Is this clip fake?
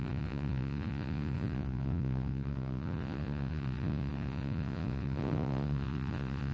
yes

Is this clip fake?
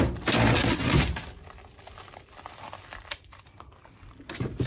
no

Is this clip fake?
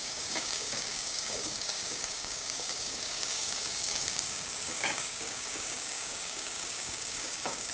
yes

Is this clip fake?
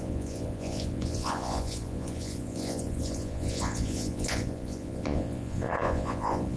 yes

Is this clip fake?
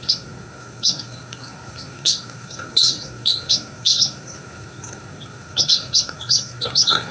yes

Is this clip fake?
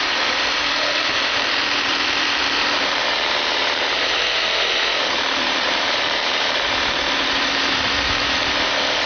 yes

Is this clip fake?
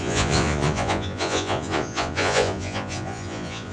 yes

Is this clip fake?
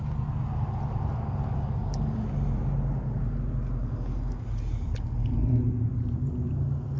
no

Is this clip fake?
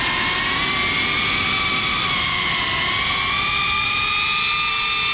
no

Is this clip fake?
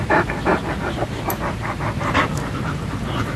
no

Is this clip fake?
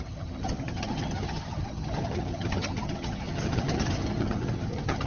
yes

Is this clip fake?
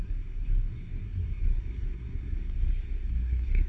yes